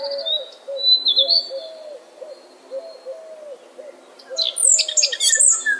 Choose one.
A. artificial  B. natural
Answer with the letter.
B